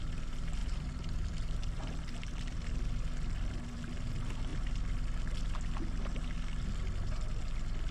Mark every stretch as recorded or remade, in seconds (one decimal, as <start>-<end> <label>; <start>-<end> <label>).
0.0-0.6 recorded; 0.6-3.6 remade; 3.6-7.9 recorded